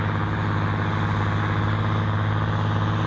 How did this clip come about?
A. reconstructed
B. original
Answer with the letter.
B